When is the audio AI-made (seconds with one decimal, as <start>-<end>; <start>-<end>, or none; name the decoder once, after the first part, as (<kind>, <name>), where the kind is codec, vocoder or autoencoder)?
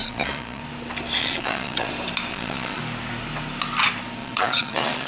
0.0-0.6 (vocoder, Vocos); 1.2-1.9; 2.3-2.8; 4.2-5.1